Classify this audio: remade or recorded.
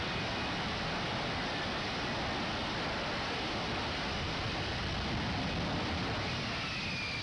recorded